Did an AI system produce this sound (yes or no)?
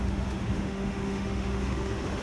yes